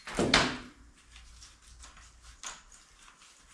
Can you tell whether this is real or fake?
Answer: real